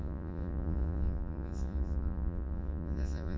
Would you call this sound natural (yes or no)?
no